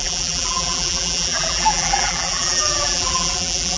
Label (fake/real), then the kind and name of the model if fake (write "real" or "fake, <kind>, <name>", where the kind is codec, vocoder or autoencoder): fake, vocoder, BigVGAN v2